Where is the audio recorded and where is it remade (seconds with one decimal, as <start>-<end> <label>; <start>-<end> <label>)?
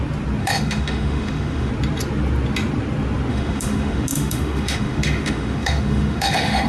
0.0-0.4 recorded; 0.4-1.7 remade; 1.7-3.3 recorded; 3.3-6.7 remade